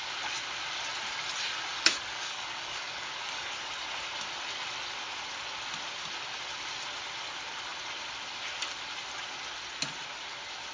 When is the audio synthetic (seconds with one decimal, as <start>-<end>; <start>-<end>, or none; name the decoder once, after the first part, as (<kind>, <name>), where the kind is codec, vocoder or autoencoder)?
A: 1.7-3.6 (codec, DAC)